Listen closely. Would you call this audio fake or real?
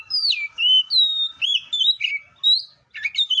real